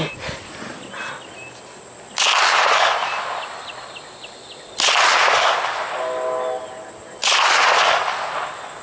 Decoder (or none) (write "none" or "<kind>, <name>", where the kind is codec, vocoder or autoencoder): none